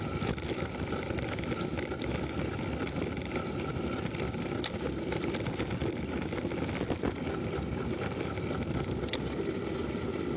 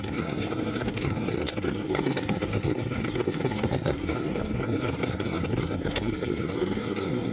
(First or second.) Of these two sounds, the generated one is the second